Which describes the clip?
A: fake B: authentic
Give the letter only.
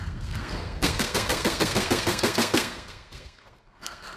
A